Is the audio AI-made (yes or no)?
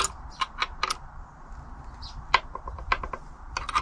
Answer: no